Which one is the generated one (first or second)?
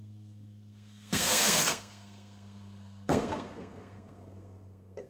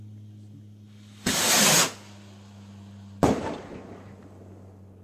first